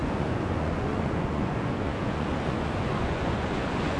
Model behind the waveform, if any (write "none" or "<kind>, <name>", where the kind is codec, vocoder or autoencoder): vocoder, Vocos